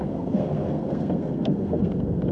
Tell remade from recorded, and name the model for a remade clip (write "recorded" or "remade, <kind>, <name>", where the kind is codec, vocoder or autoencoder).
remade, codec, SNAC